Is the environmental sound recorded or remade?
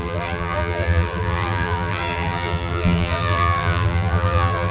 remade